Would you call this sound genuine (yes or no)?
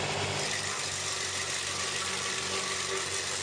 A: yes